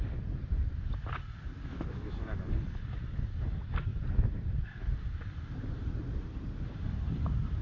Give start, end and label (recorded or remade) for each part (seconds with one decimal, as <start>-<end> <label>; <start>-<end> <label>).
0.0-1.6 recorded; 1.6-2.4 remade; 2.4-7.6 recorded